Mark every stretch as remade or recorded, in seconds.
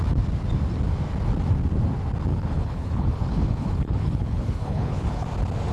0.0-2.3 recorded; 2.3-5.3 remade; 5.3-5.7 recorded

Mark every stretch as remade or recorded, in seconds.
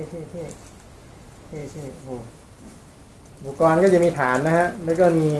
0.0-1.6 recorded; 1.6-3.2 remade; 3.2-5.4 recorded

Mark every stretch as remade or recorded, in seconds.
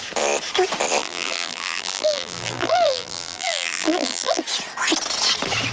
0.0-1.0 recorded; 1.0-4.4 remade; 4.4-5.7 recorded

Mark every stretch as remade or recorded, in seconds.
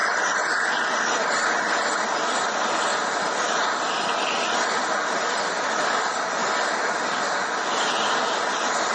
0.0-2.3 recorded; 2.3-2.9 remade; 2.9-3.8 recorded; 3.8-6.4 remade; 6.4-8.9 recorded